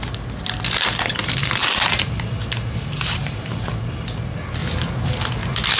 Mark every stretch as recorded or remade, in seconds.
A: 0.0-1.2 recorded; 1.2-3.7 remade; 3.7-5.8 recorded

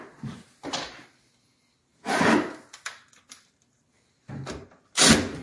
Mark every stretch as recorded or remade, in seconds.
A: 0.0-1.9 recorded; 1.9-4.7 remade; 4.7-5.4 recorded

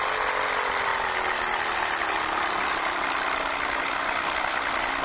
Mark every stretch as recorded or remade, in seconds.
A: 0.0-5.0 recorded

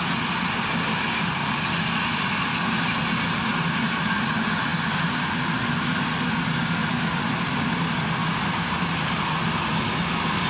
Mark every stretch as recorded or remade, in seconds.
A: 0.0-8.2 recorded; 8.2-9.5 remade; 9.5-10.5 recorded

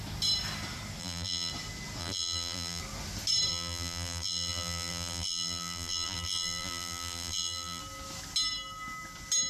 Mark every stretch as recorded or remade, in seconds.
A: 0.0-1.0 recorded; 1.0-1.5 remade; 1.5-2.0 recorded; 2.0-2.8 remade; 2.8-3.5 recorded; 3.5-7.8 remade; 7.8-9.5 recorded

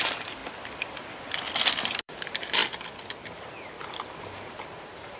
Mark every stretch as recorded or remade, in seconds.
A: 0.0-0.4 remade; 0.4-1.7 recorded; 1.7-2.6 remade; 2.6-3.9 recorded; 3.9-5.2 remade